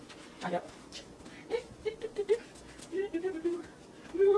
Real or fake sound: real